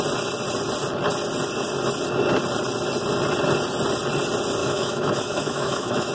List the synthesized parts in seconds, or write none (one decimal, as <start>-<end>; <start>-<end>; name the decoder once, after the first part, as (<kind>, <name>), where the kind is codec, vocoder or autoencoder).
4.6-6.1 (autoencoder, DAC-VAE)